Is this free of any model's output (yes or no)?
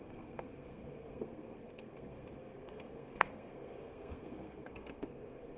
no